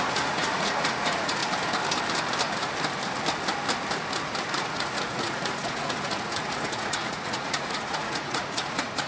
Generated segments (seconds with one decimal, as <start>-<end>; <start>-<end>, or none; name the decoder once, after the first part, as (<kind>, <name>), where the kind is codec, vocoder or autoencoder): 0.0-1.4 (vocoder, Vocos); 4.5-9.1